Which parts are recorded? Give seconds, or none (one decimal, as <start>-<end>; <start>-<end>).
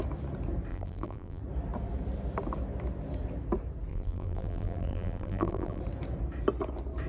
0.0-0.7; 1.4-3.9; 5.8-7.1